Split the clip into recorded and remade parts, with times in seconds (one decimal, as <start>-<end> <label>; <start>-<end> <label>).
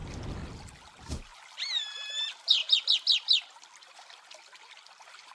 0.0-0.9 recorded; 0.9-1.3 remade; 1.3-1.8 recorded; 1.8-2.6 remade; 2.6-3.8 recorded; 3.8-5.3 remade